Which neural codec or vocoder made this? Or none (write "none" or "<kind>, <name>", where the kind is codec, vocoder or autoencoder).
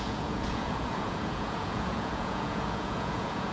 vocoder, Vocos